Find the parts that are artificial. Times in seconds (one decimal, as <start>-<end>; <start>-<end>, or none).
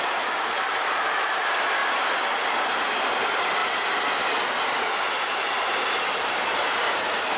0.0-1.8; 2.5-3.6; 6.9-7.4